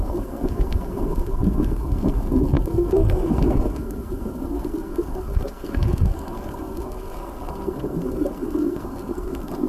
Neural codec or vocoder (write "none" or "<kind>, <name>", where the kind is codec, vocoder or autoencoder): codec, SNAC